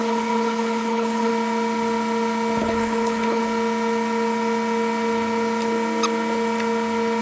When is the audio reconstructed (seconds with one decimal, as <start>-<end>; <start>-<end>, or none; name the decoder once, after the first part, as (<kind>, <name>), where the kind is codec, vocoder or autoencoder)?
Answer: 0.0-1.3 (codec, HILCodec); 2.6-3.4